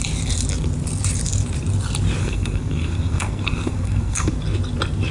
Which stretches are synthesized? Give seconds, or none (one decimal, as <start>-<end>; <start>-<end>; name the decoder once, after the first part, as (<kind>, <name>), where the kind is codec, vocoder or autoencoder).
2.2-4.3 (codec, SNAC)